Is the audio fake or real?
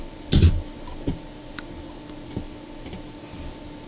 real